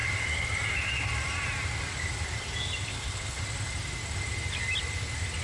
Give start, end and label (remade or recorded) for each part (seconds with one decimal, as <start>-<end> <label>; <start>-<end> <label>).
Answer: 0.0-2.9 recorded; 2.9-3.4 remade; 3.4-5.4 recorded